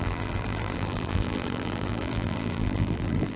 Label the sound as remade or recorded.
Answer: remade